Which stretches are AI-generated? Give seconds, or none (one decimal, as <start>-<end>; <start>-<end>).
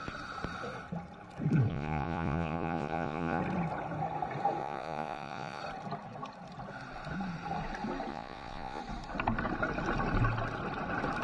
1.7-3.4; 4.6-5.6; 8.1-8.8